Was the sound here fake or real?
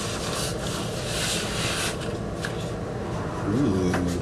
real